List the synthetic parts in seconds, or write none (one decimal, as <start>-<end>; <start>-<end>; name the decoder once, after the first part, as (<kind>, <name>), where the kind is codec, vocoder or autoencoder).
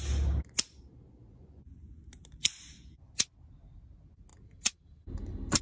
1.3-2.0 (vocoder, Vocos); 2.5-3.1